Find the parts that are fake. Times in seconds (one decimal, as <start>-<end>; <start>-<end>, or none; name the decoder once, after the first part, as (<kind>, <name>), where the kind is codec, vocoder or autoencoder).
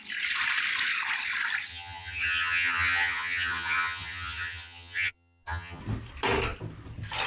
1.7-5.8 (vocoder, HiFi-GAN)